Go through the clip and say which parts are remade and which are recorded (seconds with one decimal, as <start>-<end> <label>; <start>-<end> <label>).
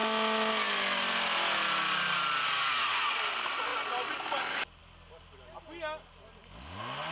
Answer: 0.0-7.1 recorded